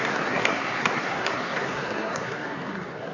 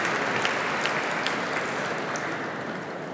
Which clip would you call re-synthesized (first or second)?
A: first